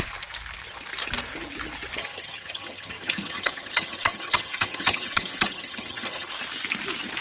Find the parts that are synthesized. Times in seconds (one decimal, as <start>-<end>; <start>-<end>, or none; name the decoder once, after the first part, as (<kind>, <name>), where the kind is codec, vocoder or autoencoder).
2.0-6.3 (vocoder, HiFi-GAN)